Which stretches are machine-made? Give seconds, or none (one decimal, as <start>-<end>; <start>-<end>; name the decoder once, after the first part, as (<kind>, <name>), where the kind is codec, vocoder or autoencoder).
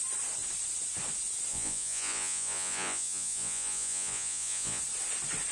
1.5-4.8 (vocoder, Vocos)